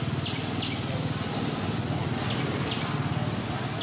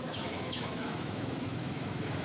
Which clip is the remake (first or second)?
second